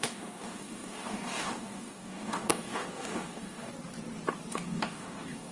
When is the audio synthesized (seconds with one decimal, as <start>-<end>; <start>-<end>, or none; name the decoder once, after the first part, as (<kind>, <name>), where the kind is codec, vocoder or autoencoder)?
0.0-3.7 (codec, DAC); 4.5-5.5